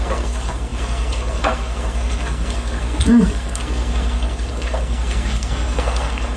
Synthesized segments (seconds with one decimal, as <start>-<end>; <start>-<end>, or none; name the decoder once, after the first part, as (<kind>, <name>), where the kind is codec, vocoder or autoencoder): 0.0-6.4 (codec, SNAC)